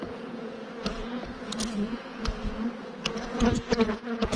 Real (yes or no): no